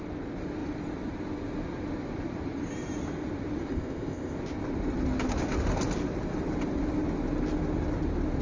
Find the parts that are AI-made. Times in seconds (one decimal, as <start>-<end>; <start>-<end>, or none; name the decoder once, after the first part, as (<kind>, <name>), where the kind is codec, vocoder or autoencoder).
3.7-4.4 (codec, ZipCodec)